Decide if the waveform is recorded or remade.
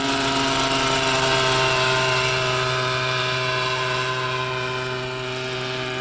recorded